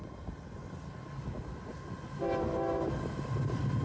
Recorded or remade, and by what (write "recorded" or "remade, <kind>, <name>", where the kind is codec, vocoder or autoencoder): recorded